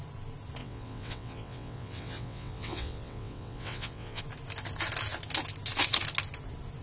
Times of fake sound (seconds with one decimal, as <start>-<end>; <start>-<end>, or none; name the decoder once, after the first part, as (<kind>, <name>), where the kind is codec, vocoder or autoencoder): 0.6-4.2 (vocoder, WaveNeXt)